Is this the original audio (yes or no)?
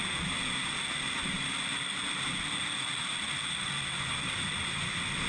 yes